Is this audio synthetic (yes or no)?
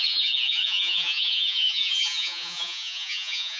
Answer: yes